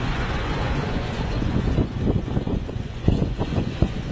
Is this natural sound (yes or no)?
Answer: no